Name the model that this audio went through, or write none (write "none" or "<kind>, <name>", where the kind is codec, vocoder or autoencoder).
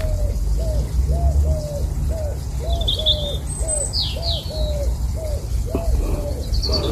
none